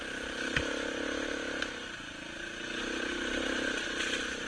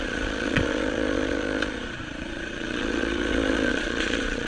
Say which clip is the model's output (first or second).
second